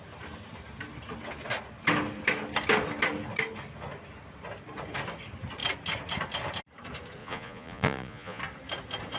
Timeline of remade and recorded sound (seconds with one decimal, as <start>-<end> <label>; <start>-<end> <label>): 0.0-7.2 recorded; 7.2-8.4 remade; 8.4-9.2 recorded